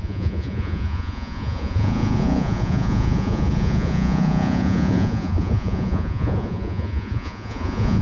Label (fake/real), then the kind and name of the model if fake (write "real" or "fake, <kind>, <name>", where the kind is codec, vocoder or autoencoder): fake, vocoder, Vocos